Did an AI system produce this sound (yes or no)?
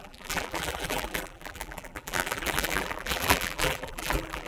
yes